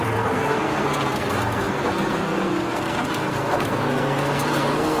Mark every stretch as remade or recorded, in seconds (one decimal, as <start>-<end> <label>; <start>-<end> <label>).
0.0-5.0 remade